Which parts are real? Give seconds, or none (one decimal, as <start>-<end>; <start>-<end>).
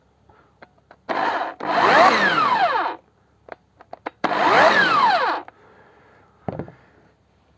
none